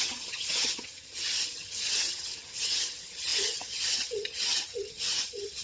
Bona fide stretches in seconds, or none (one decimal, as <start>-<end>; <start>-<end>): none